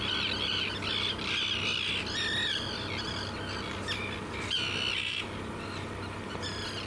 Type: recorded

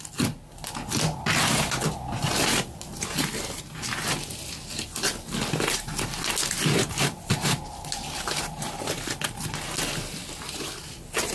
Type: recorded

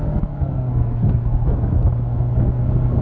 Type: remade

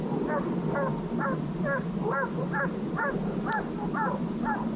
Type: recorded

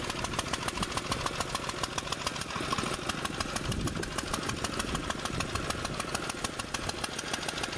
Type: recorded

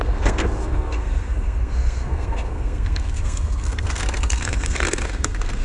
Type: remade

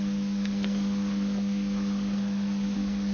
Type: remade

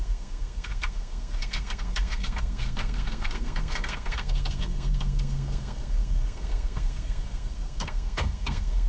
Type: remade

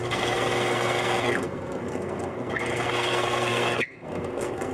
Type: remade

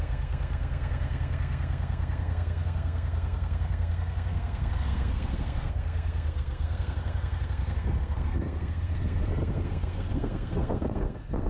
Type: remade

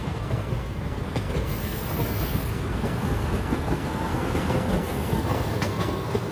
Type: remade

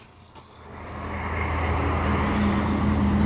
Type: recorded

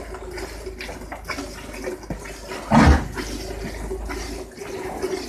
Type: recorded